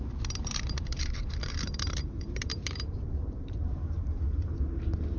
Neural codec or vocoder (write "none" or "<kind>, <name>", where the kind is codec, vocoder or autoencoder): vocoder, BigVGAN v2